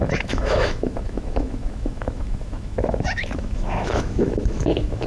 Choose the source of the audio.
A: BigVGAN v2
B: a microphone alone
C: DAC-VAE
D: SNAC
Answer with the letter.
C